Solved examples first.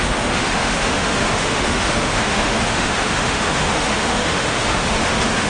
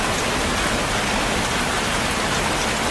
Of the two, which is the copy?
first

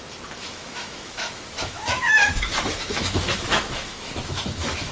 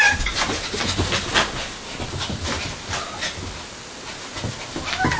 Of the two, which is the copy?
first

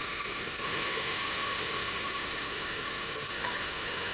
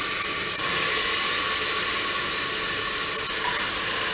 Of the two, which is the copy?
first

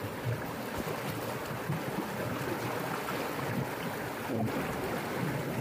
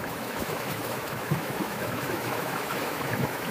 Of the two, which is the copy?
second